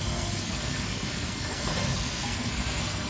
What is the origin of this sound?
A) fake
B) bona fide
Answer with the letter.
A